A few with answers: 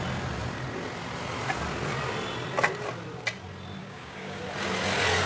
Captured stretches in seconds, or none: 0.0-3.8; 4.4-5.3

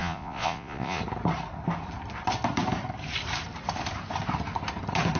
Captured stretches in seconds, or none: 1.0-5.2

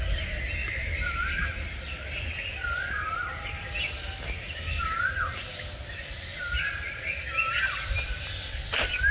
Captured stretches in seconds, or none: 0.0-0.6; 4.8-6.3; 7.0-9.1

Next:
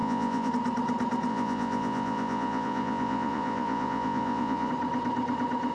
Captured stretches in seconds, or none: 0.5-1.3; 4.7-5.7

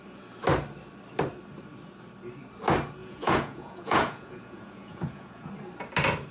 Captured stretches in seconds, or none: 0.0-3.0; 5.5-6.3

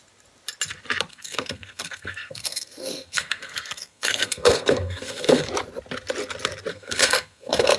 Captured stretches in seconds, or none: 0.0-1.1; 5.5-6.7